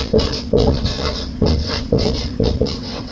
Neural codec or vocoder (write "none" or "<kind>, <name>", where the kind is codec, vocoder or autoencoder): vocoder, WaveNeXt